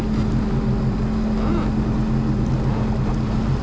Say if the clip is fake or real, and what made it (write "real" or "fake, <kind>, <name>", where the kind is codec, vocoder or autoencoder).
real